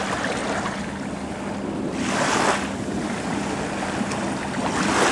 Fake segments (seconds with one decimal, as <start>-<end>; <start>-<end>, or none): none